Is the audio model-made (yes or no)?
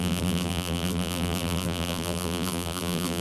yes